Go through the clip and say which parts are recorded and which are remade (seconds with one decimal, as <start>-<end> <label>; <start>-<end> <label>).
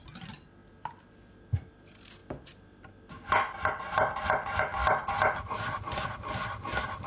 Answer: 0.0-7.1 recorded